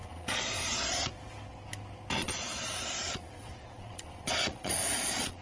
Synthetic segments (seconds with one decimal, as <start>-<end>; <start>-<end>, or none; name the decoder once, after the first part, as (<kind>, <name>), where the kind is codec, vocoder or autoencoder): 0.0-1.1 (vocoder, Vocos); 2.2-5.4